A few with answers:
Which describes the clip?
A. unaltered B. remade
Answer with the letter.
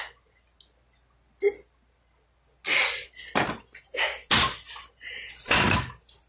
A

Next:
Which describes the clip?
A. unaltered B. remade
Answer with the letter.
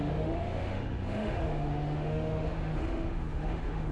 B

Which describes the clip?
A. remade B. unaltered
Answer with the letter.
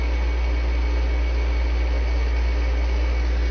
B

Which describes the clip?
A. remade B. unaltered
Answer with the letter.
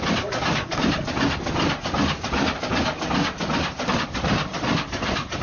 B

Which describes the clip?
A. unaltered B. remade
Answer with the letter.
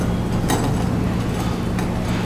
A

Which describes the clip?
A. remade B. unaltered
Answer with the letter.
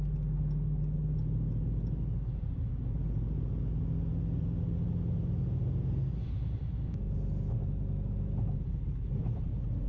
B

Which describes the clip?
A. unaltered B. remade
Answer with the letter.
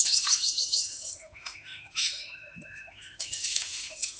B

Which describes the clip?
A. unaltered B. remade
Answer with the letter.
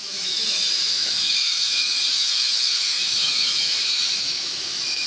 B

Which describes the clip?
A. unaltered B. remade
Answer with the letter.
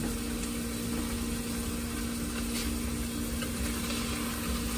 A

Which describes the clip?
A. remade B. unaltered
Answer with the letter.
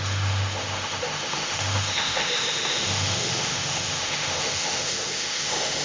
A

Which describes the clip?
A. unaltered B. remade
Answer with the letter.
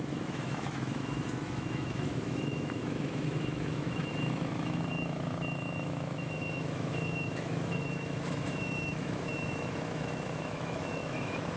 B